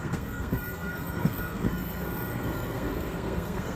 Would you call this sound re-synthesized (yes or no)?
yes